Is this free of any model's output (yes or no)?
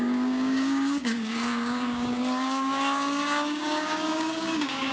no